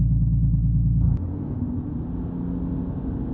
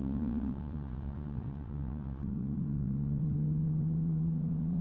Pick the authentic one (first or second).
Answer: first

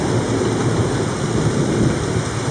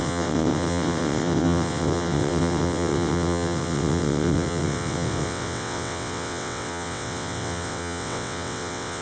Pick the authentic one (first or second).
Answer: first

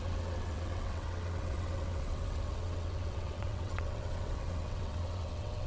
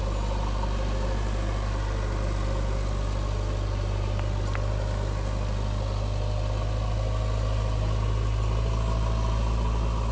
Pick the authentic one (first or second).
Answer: second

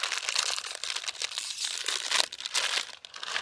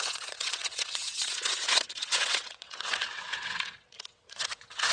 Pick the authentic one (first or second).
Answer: first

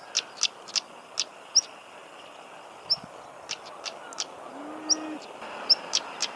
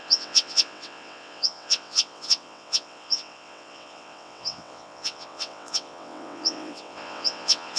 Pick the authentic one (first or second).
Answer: first